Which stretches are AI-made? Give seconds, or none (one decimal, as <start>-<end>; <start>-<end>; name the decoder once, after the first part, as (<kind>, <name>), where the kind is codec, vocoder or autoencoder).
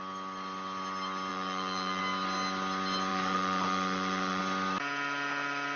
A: 1.3-2.0 (vocoder, Vocos); 3.1-4.4